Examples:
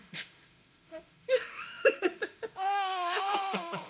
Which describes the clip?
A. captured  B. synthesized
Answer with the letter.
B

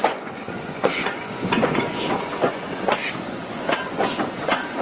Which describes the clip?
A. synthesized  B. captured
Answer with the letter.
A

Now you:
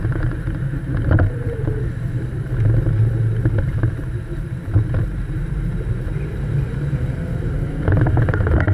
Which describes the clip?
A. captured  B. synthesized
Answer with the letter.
B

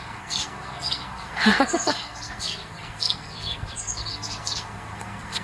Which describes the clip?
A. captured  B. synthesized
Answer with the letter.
B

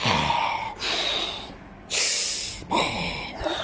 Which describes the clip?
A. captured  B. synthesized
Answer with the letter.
A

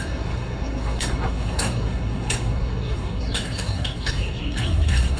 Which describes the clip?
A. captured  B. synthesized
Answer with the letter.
B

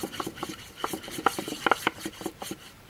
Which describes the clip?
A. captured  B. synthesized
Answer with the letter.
B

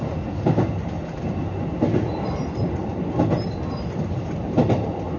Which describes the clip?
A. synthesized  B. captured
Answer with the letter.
B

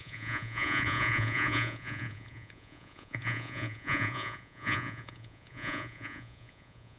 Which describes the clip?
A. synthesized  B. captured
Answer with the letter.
A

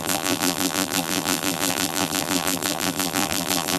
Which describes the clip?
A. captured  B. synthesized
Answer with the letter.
B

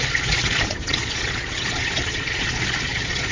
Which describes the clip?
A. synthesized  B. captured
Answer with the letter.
A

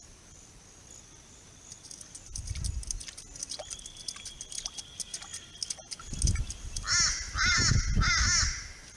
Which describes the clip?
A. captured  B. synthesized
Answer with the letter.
A